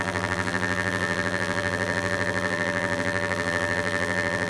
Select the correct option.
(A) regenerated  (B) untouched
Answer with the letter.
A